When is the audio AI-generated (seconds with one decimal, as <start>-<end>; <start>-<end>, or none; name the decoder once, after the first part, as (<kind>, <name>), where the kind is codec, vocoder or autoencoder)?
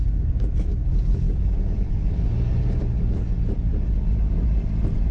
none